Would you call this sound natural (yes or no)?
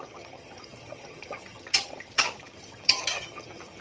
no